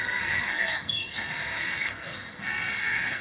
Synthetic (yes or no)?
yes